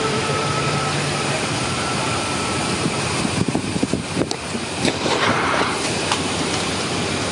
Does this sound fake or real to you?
fake